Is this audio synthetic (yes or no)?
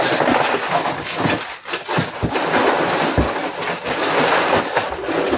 no